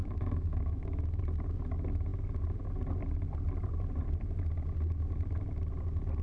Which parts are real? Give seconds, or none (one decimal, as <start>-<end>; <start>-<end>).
1.2-6.2